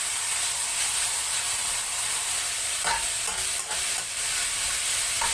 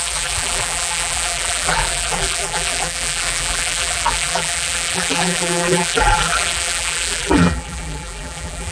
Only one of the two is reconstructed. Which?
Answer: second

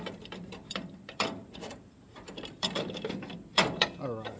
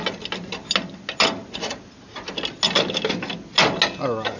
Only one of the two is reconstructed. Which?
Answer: first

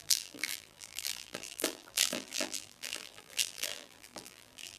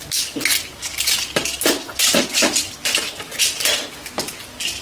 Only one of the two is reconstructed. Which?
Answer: first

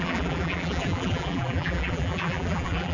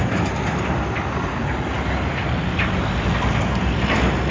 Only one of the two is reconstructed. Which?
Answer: first